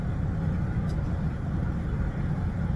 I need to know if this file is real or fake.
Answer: real